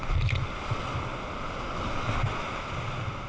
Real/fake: real